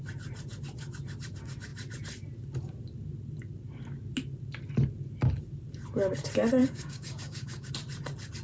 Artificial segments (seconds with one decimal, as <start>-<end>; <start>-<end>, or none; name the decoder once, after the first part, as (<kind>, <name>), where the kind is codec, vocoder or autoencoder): 6.6-7.7 (codec, DAC)